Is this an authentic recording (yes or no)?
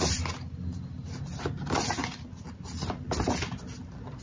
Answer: yes